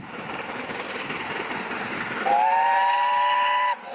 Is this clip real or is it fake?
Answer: real